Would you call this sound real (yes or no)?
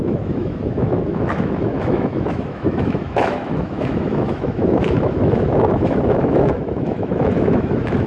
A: no